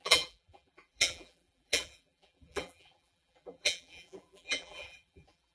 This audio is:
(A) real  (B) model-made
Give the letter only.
B